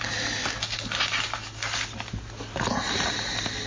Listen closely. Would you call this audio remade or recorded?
recorded